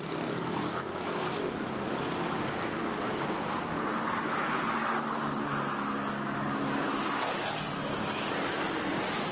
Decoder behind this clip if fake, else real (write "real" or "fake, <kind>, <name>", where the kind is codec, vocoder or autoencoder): real